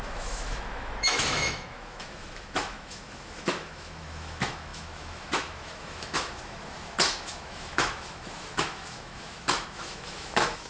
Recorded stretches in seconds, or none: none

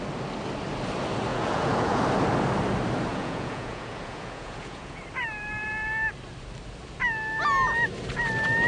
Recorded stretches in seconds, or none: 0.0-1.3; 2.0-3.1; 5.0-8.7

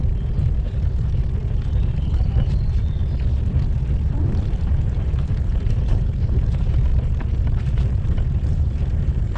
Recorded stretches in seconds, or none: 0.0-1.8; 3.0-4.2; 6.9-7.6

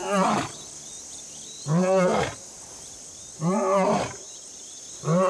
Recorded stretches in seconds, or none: 0.0-5.3